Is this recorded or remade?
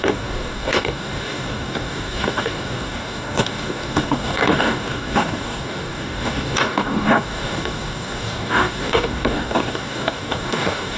remade